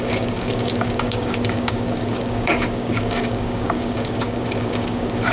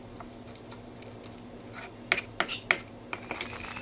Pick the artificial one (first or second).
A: first